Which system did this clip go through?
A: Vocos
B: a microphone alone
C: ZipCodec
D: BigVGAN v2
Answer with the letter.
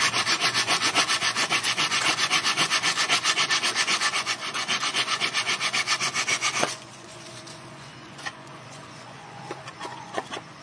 A